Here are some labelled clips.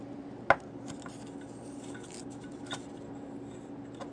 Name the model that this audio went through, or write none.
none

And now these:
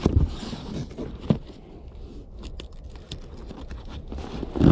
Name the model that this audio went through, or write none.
none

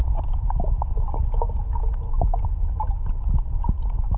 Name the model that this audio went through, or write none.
none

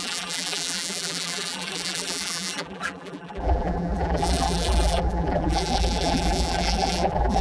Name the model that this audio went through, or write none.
vocoder, BigVGAN v2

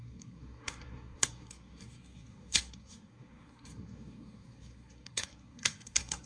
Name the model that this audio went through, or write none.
codec, SNAC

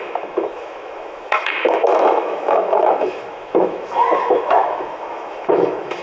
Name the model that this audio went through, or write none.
autoencoder, DAC-VAE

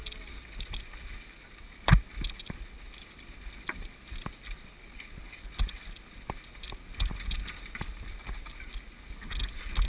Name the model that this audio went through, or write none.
none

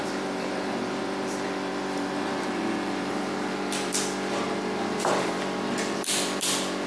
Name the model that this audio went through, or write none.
vocoder, BigVGAN v2